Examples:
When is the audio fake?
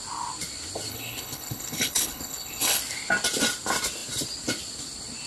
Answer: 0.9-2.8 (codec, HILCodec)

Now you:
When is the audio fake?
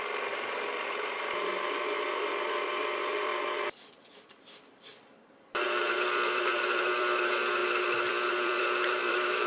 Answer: 0.0-3.3 (vocoder, BigVGAN v2); 3.9-9.5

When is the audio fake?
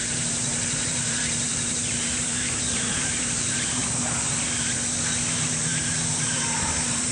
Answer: 0.0-3.8 (vocoder, BigVGAN v2); 5.2-7.1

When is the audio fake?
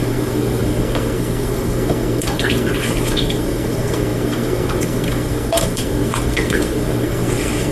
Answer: 0.0-7.7 (codec, SNAC)